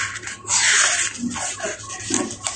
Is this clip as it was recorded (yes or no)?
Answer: yes